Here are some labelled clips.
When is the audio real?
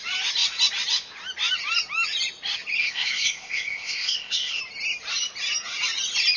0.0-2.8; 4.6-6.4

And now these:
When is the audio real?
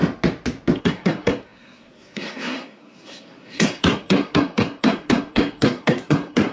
0.0-0.8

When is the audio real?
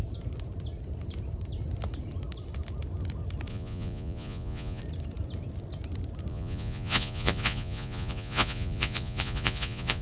0.0-3.5; 4.8-6.3